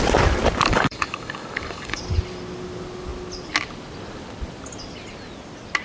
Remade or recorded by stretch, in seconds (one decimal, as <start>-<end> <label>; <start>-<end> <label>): 0.0-0.7 recorded; 0.7-2.0 remade; 2.0-5.8 recorded